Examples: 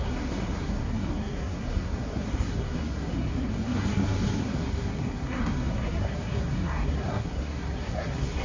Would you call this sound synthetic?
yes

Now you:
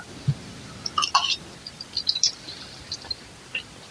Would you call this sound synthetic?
no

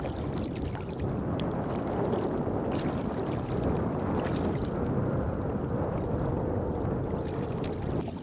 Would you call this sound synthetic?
no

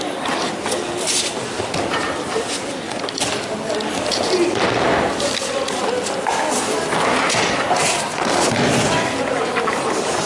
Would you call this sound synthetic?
no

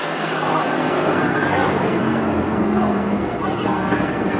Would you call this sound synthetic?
yes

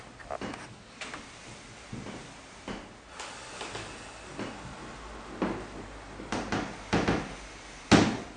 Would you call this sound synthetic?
no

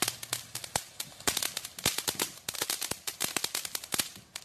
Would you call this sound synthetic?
no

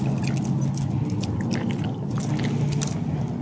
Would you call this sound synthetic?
no